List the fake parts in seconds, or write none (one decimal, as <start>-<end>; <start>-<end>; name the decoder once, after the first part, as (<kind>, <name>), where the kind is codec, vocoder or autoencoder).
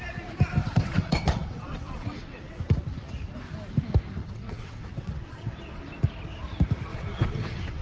0.6-2.6 (vocoder, WaveNeXt); 4.2-5.8; 6.9-7.8